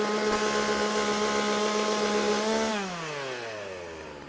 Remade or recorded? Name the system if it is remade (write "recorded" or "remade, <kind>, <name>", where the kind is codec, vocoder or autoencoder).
recorded